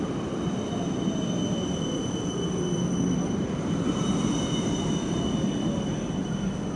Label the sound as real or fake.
real